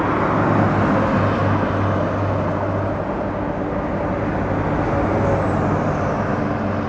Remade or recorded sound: recorded